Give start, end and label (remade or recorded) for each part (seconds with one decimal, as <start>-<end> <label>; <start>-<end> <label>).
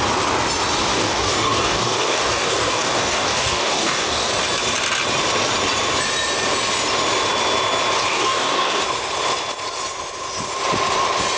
0.0-0.9 recorded; 0.9-4.3 remade; 4.3-8.1 recorded; 8.1-8.8 remade; 8.8-11.4 recorded